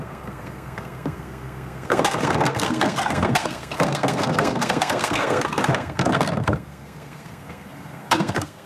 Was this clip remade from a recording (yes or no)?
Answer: yes